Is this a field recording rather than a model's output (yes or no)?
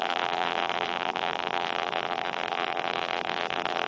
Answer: no